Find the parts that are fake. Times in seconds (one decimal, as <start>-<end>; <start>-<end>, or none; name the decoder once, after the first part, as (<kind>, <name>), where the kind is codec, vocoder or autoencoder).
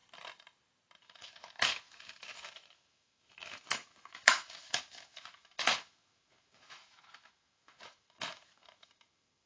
1.0-9.5 (autoencoder, DAC-VAE)